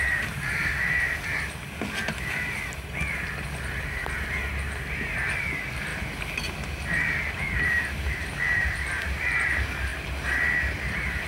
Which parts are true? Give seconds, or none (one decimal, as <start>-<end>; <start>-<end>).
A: 0.6-4.5; 5.9-7.3; 9.9-10.9